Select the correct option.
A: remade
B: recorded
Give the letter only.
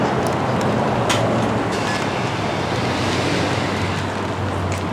B